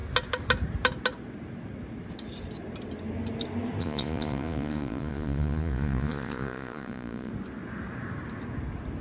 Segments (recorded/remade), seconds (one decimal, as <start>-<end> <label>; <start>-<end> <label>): 0.0-3.8 recorded; 3.8-7.3 remade; 7.3-9.0 recorded